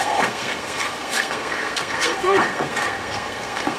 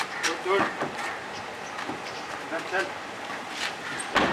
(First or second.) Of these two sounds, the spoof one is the first